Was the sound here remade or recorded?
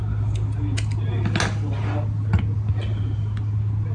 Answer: recorded